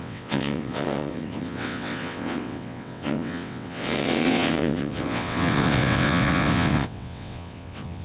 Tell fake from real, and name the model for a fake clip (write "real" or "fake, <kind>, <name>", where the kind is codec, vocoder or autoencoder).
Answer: fake, vocoder, WaveNeXt